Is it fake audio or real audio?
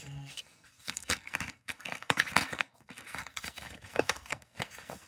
fake